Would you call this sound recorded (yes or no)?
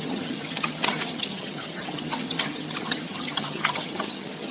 no